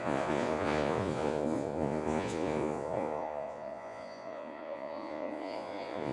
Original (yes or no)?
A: no